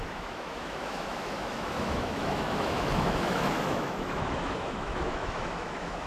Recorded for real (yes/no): no